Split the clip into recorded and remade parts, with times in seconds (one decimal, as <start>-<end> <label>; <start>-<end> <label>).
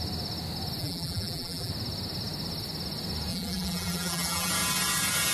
0.0-0.8 recorded; 0.8-1.7 remade; 1.7-3.3 recorded; 3.3-4.5 remade; 4.5-5.3 recorded